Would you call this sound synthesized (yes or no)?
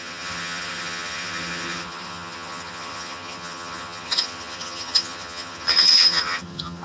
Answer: yes